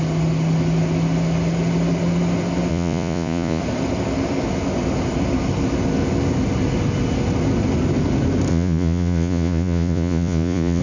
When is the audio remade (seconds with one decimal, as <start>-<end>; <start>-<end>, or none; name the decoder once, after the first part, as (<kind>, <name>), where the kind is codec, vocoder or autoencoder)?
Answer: 2.7-3.6 (vocoder, Vocos); 8.5-10.8